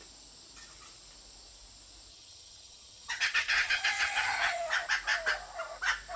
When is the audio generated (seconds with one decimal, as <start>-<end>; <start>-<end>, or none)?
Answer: 2.1-4.6